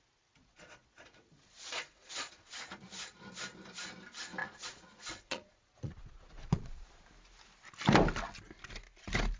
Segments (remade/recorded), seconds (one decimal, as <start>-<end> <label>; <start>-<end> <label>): 0.0-0.4 recorded; 0.4-2.5 remade; 2.5-4.4 recorded; 4.4-7.0 remade; 7.0-9.4 recorded